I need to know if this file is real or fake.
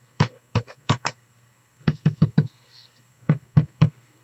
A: fake